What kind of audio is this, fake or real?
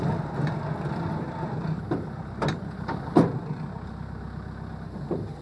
real